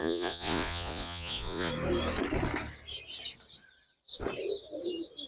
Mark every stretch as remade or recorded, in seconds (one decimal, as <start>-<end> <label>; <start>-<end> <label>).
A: 0.0-1.7 remade; 1.7-5.3 recorded